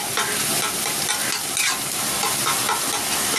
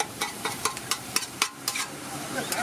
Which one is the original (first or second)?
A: first